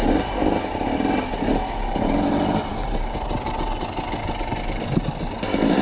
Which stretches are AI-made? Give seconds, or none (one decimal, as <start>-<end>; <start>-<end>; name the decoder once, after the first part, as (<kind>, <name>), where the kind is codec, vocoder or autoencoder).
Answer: none